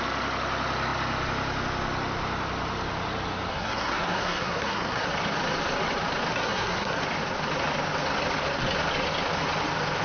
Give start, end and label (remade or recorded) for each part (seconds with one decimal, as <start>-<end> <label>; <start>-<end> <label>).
0.0-3.5 recorded; 3.5-5.1 remade; 5.1-6.3 recorded; 6.3-7.0 remade; 7.0-10.0 recorded